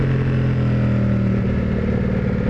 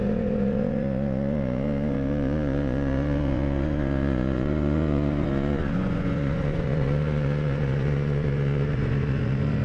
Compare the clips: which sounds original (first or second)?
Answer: first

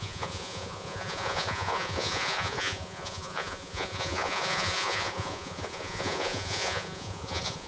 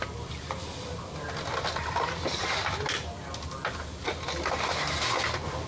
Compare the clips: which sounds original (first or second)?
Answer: second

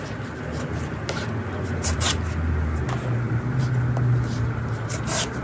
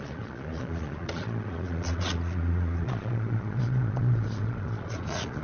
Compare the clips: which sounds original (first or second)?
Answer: first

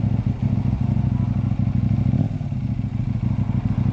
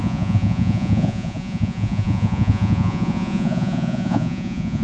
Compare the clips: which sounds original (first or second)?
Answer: first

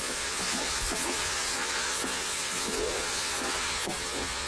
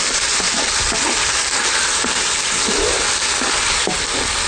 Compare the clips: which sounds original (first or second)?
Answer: second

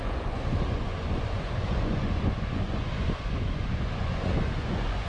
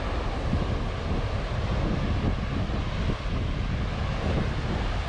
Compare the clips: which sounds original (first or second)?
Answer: second